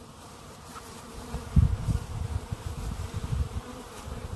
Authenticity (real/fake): fake